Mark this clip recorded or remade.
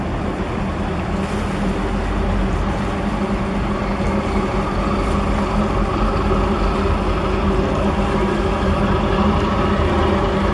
recorded